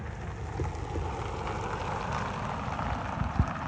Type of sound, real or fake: real